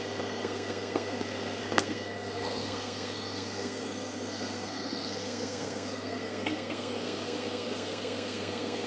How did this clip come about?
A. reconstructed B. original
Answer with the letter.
A